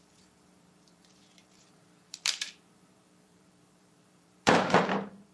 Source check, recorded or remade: remade